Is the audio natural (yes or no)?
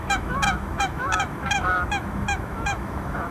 no